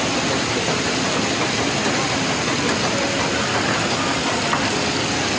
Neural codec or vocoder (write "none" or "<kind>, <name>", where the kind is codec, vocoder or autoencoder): none